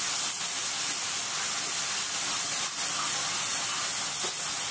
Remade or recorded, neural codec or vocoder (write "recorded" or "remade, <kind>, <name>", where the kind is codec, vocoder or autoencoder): recorded